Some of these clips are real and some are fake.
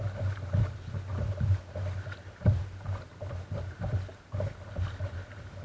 real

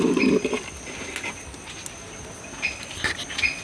real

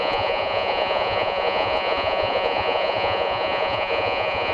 fake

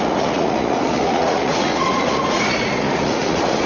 fake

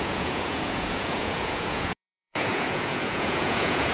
fake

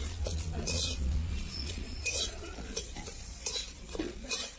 fake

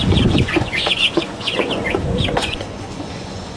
fake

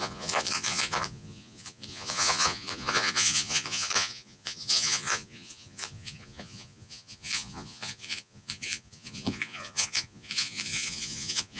fake